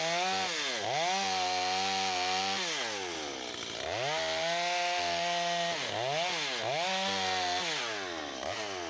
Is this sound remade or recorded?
recorded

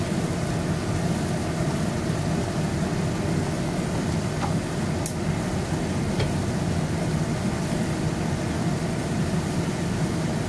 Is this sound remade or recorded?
recorded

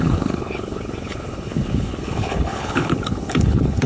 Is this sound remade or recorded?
remade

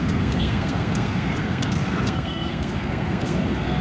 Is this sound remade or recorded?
remade